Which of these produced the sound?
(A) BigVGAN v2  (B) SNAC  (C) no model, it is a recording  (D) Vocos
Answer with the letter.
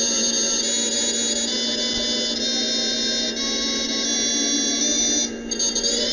C